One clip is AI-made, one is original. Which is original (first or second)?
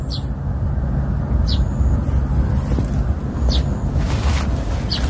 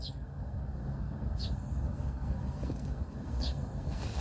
first